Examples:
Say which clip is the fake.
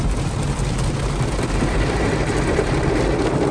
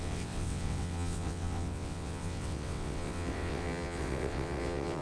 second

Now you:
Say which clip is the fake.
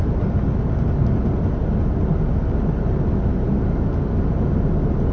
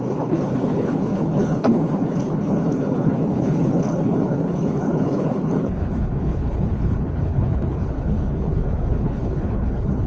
second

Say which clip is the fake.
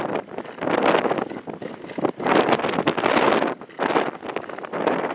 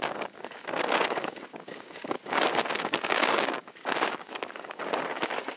second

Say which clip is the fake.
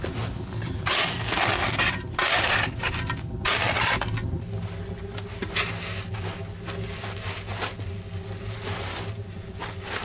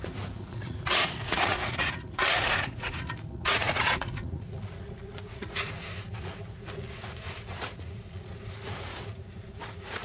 second